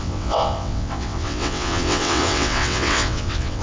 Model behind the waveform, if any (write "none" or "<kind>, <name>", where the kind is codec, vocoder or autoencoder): vocoder, WaveNeXt